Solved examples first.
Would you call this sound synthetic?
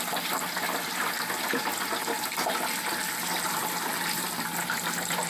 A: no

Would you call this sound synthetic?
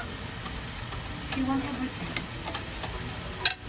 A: no